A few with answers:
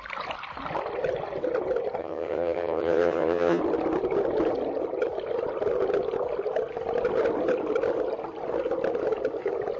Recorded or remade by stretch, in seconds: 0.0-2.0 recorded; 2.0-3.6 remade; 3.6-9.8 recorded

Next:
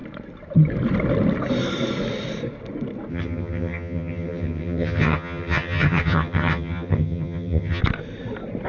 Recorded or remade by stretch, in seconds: 0.0-3.1 recorded; 3.1-7.8 remade; 7.8-8.7 recorded

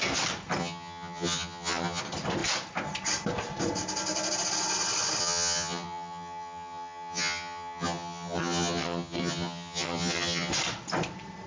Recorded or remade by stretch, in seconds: 0.0-0.6 recorded; 0.6-2.0 remade; 2.0-5.2 recorded; 5.2-10.5 remade; 10.5-11.5 recorded

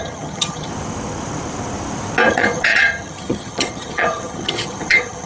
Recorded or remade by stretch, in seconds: 0.0-0.7 remade; 0.7-2.3 recorded; 2.3-5.3 remade

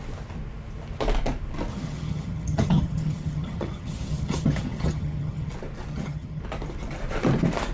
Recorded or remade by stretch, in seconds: 0.0-1.7 recorded; 1.7-5.5 remade; 5.5-5.9 recorded; 5.9-6.4 remade; 6.4-7.7 recorded